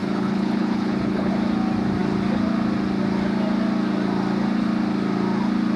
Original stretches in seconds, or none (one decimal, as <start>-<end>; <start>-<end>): 1.3-5.8